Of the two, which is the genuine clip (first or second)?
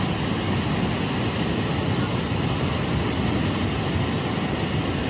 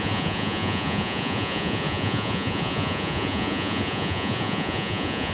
first